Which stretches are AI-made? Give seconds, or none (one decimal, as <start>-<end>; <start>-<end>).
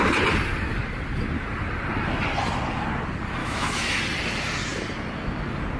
3.4-4.0